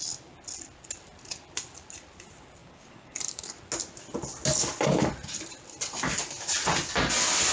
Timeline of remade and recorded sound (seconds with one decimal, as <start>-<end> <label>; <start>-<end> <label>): 0.0-2.6 recorded; 2.6-3.5 remade; 3.5-4.5 recorded; 4.5-5.1 remade; 5.1-7.5 recorded